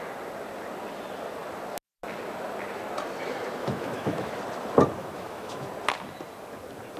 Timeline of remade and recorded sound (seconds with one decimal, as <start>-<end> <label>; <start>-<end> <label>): 0.0-3.6 recorded; 3.6-4.3 remade; 4.3-5.0 recorded; 5.0-5.7 remade; 5.7-7.0 recorded

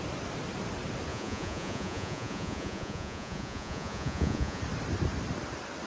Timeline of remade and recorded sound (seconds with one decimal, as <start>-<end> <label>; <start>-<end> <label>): 0.0-1.1 recorded; 1.1-4.6 remade; 4.6-5.9 recorded